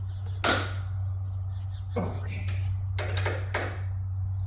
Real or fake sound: real